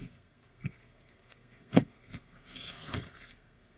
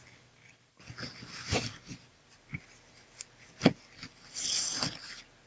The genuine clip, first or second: second